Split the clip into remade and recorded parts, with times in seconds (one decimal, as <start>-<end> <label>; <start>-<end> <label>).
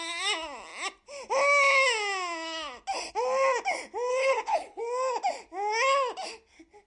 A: 0.0-4.1 recorded; 4.1-4.8 remade; 4.8-6.9 recorded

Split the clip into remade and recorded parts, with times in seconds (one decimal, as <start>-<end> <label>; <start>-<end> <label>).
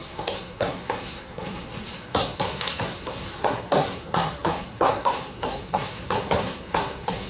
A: 0.0-7.3 remade